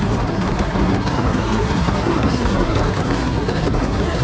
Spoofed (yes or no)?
yes